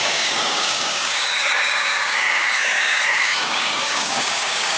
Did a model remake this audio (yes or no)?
yes